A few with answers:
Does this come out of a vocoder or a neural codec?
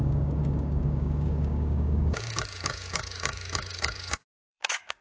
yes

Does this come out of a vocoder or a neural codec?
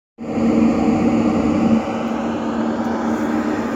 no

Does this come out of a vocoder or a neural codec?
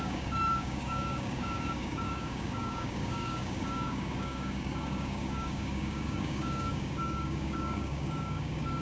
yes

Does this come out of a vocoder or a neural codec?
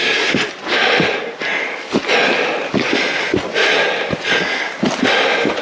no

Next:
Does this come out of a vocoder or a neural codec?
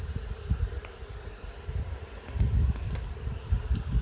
no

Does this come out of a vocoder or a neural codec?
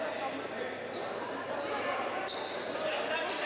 no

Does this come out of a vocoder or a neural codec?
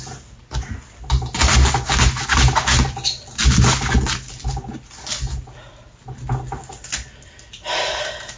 no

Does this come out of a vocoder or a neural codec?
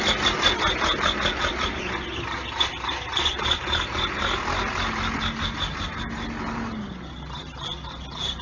no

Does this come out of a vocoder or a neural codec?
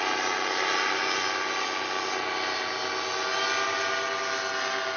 no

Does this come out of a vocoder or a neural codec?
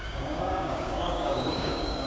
yes